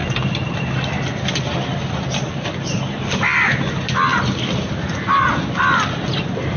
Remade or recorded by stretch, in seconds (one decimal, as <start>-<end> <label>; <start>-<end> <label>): 0.0-6.6 recorded